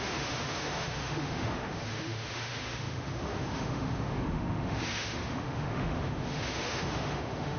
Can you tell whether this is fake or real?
fake